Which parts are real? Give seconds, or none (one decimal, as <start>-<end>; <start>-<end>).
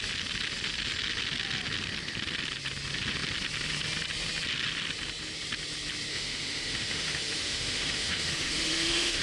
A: 0.0-6.1